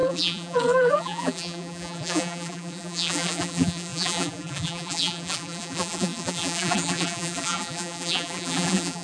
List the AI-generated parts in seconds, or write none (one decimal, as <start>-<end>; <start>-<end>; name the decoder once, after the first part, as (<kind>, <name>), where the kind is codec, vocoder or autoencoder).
0.0-9.0 (vocoder, BigVGAN v2)